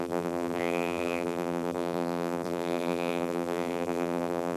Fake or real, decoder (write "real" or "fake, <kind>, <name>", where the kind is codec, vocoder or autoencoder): fake, vocoder, BigVGAN v2